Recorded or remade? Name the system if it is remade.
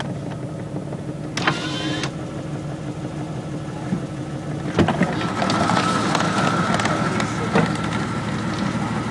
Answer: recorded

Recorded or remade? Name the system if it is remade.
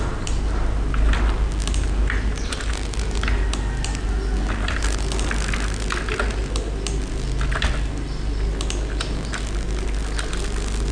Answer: recorded